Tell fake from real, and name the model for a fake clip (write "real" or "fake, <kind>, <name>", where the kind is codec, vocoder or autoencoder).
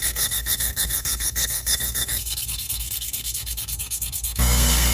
fake, codec, SNAC